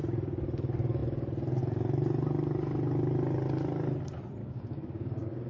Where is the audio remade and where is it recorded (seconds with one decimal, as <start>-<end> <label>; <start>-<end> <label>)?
0.0-4.4 recorded; 4.4-5.5 remade